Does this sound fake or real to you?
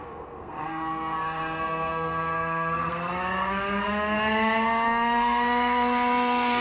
fake